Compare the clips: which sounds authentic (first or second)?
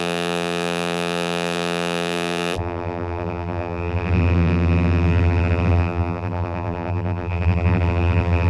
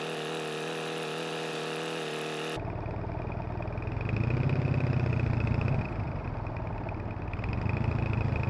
second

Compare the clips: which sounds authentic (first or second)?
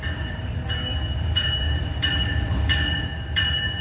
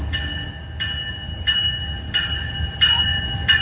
second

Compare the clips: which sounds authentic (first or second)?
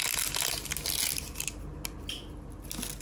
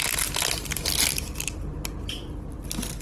first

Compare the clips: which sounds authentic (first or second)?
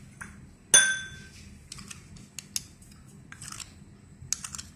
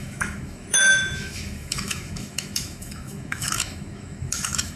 first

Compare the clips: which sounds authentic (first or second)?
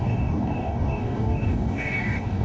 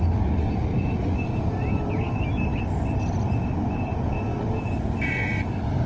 second